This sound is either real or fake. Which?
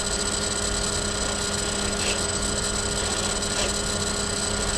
real